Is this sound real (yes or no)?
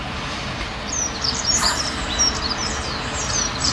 no